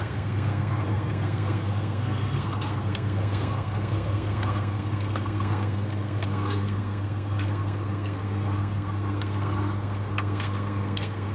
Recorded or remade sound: remade